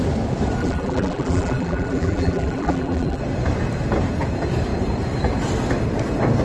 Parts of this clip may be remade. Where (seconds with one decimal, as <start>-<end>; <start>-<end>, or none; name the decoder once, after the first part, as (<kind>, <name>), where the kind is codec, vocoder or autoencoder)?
0.6-3.2 (vocoder, BigVGAN v2)